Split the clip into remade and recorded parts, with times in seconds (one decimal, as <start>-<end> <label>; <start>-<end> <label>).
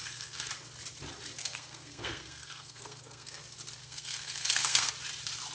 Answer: 0.0-0.5 remade; 0.5-1.4 recorded; 1.4-3.4 remade; 3.4-3.8 recorded; 3.8-4.9 remade; 4.9-5.5 recorded